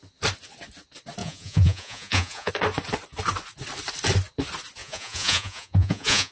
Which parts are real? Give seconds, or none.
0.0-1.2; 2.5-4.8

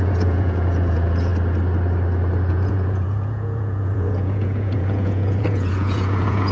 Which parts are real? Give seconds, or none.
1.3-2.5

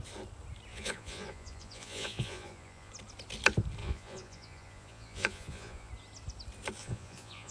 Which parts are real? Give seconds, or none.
0.0-0.7; 2.9-3.8; 5.9-6.8